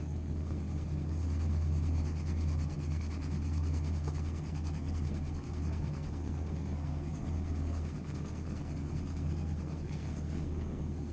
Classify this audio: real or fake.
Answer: fake